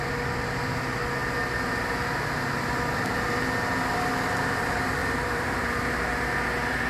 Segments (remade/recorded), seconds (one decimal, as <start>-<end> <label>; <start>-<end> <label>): 0.0-5.0 recorded; 5.0-6.1 remade; 6.1-6.9 recorded